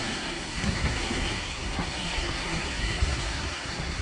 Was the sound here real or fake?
fake